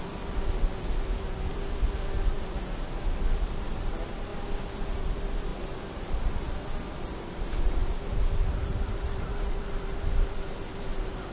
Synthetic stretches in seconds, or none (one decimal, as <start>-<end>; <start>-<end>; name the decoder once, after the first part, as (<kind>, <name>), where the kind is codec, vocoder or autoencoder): 5.5-6.5 (vocoder, BigVGAN v2); 7.8-9.7